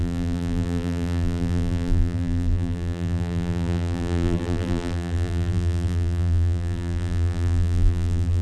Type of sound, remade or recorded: remade